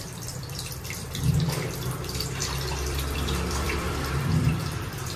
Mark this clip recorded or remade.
remade